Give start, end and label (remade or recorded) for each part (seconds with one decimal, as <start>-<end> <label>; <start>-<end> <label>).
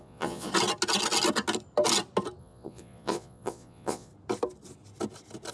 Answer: 0.0-0.5 remade; 0.5-2.4 recorded; 2.4-4.1 remade; 4.1-5.5 recorded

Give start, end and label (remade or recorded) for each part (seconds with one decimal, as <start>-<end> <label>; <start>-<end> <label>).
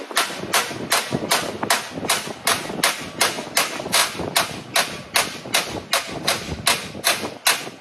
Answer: 0.0-7.8 recorded